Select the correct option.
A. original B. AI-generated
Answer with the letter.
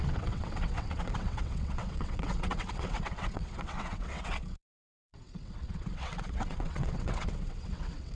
B